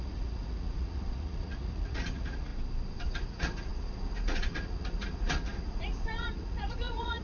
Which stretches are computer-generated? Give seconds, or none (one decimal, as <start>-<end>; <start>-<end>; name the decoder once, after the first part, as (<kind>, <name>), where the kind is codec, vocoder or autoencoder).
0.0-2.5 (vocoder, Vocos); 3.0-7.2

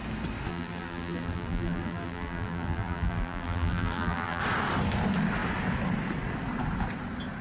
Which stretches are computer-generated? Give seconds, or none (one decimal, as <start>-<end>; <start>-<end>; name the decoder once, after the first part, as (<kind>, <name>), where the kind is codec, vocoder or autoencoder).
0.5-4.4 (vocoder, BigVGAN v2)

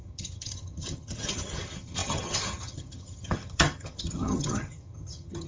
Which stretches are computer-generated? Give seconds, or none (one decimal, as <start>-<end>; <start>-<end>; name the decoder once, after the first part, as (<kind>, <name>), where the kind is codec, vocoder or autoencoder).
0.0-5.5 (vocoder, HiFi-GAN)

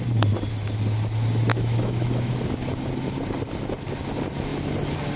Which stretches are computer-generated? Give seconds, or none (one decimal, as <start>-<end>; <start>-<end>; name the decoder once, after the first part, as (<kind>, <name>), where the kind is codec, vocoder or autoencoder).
1.5-2.3 (autoencoder, DAC-VAE)